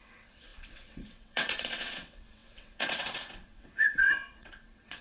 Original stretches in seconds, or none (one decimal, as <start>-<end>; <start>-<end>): none